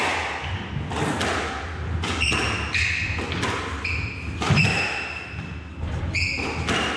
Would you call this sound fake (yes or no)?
no